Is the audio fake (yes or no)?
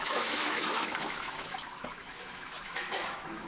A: yes